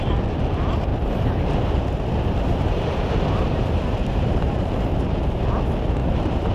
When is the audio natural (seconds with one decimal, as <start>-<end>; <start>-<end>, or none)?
0.0-0.9; 4.8-6.0